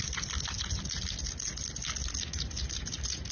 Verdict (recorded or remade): recorded